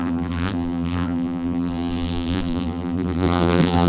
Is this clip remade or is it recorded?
remade